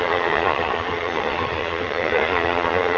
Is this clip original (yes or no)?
no